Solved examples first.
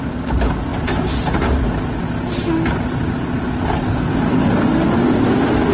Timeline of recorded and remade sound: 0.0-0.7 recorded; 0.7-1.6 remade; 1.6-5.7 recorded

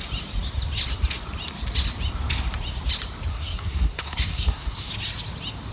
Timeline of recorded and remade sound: 0.0-3.3 recorded; 3.3-4.9 remade; 4.9-5.7 recorded

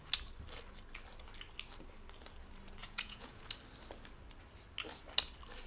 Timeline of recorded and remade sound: 0.0-2.8 recorded; 2.8-3.4 remade; 3.4-5.7 recorded

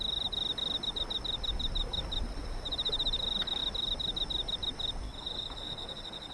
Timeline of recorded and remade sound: 0.0-6.3 recorded

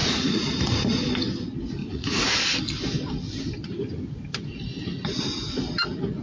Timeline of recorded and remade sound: 0.0-0.6 remade; 0.6-1.8 recorded; 1.8-2.3 remade; 2.3-6.2 recorded

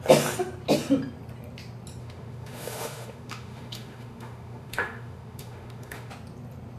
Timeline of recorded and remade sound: 0.0-2.0 recorded; 2.0-6.1 remade; 6.1-6.8 recorded